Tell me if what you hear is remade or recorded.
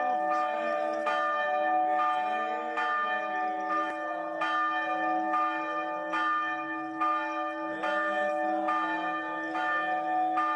recorded